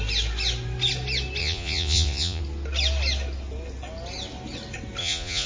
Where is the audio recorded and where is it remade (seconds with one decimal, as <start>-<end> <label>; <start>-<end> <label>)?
0.0-1.4 recorded; 1.4-2.4 remade; 2.4-5.0 recorded; 5.0-5.5 remade